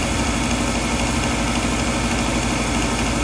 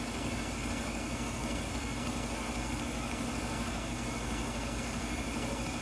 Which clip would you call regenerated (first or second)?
second